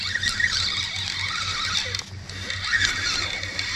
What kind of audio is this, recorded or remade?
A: recorded